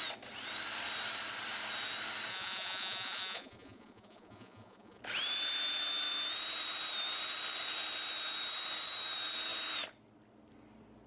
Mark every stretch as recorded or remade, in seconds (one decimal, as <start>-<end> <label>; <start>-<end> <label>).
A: 0.0-2.3 recorded; 2.3-5.0 remade; 5.0-11.1 recorded